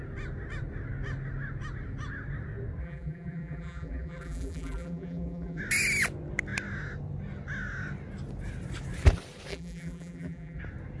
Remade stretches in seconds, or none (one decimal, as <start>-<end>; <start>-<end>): 2.8-5.6; 9.5-10.6